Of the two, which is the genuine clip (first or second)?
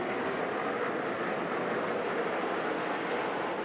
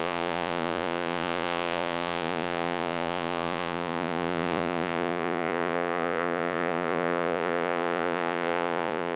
first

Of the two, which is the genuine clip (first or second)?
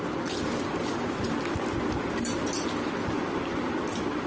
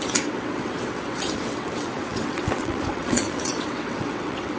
first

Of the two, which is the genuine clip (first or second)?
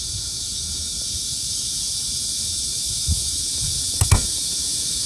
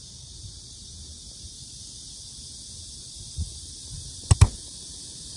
second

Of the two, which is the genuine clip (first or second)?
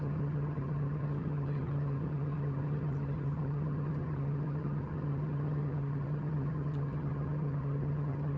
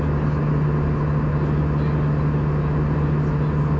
second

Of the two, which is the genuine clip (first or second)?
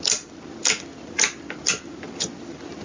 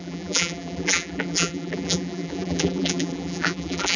first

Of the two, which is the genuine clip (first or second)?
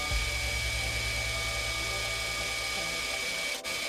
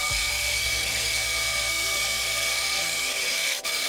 first